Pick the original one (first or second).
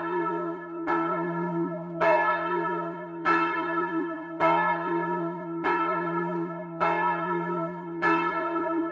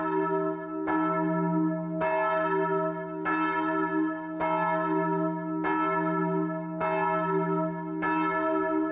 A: second